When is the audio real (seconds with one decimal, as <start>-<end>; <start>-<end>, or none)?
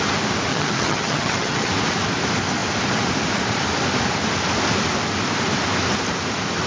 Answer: 0.0-0.5; 1.7-6.7